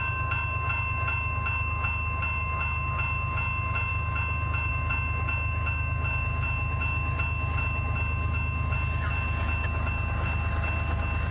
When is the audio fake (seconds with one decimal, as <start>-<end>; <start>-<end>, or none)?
none